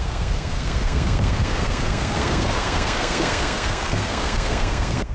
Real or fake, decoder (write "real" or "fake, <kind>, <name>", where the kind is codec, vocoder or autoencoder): fake, codec, SNAC